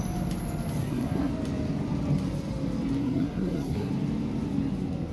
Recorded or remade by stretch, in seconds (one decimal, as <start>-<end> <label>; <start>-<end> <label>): 0.0-0.8 recorded; 0.8-1.3 remade; 1.3-3.0 recorded; 3.0-3.9 remade; 3.9-5.1 recorded